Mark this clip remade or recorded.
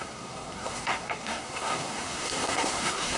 remade